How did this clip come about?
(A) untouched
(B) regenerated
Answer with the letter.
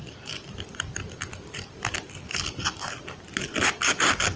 A